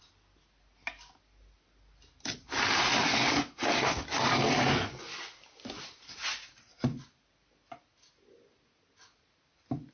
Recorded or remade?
recorded